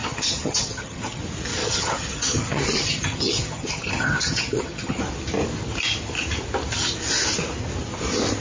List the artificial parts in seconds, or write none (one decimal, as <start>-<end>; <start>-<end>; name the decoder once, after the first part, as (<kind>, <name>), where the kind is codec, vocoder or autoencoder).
0.0-1.2 (vocoder, HiFi-GAN); 1.6-5.0